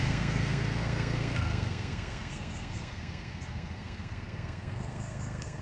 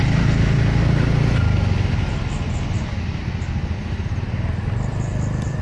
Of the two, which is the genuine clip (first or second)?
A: second